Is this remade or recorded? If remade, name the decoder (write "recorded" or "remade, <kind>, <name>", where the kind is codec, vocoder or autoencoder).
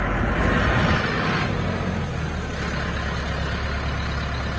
recorded